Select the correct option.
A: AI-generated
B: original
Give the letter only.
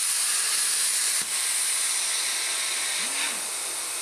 B